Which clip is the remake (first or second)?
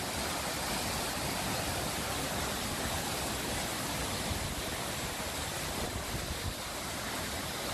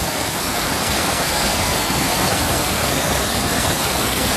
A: second